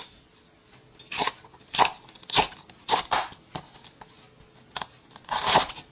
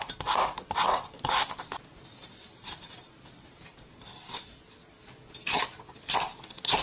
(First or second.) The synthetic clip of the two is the second